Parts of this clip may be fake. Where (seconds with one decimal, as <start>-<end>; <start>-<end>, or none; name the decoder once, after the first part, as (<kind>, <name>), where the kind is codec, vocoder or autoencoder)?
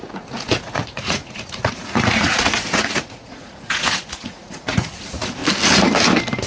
0.0-5.4 (vocoder, Vocos)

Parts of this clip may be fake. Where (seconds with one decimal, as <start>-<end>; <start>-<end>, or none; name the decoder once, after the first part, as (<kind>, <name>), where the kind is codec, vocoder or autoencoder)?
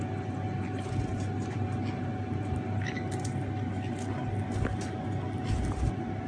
none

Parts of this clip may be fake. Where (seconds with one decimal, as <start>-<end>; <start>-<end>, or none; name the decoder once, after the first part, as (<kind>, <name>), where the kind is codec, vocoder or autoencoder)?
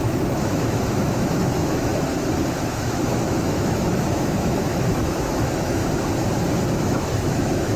0.0-1.9 (autoencoder, DAC-VAE); 2.5-5.8; 6.7-7.8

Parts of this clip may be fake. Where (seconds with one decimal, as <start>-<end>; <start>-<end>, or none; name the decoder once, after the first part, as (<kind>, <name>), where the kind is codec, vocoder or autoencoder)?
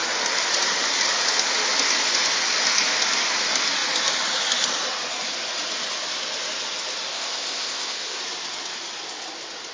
7.1-8.2 (codec, ZipCodec)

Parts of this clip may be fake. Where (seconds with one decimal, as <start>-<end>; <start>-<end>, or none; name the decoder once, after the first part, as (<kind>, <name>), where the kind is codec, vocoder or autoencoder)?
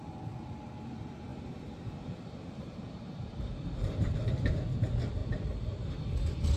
1.3-4.5 (vocoder, BigVGAN v2); 5.2-6.0